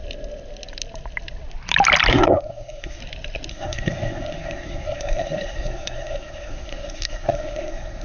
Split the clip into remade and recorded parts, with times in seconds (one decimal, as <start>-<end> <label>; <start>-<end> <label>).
0.0-2.1 recorded; 2.1-3.0 remade; 3.0-3.5 recorded; 3.5-8.0 remade